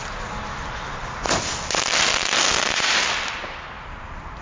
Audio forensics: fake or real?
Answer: real